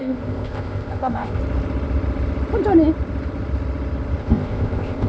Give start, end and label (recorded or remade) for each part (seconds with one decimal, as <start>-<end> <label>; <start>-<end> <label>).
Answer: 0.0-1.4 remade; 1.4-4.2 recorded; 4.2-5.1 remade